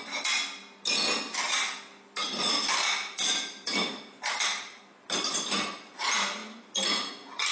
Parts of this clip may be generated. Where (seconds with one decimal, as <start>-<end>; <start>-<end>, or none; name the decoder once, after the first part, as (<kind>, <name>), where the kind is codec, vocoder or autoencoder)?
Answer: 2.2-4.8 (vocoder, BigVGAN v2)